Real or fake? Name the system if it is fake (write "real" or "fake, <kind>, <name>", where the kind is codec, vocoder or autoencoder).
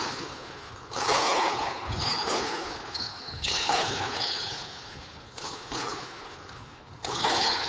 fake, codec, HILCodec